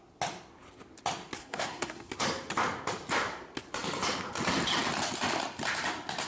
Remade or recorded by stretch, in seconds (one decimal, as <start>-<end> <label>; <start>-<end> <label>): 0.0-1.4 recorded; 1.4-2.1 remade; 2.1-6.3 recorded